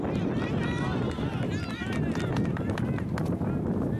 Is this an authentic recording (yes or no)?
yes